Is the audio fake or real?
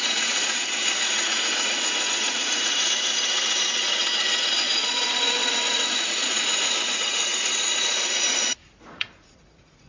fake